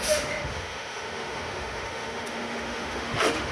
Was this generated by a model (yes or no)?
yes